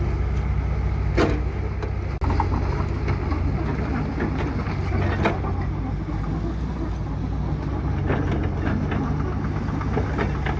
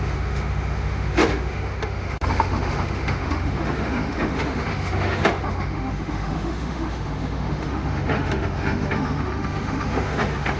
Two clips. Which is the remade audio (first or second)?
second